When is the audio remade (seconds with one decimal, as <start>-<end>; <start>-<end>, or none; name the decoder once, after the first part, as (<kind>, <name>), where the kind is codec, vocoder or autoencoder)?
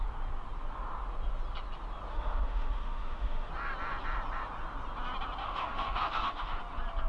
2.1-3.5 (autoencoder, DAC-VAE); 5.4-6.6